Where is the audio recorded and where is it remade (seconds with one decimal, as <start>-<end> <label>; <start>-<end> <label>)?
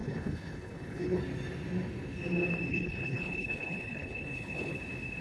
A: 0.0-1.2 remade; 1.2-2.7 recorded; 2.7-4.8 remade; 4.8-5.2 recorded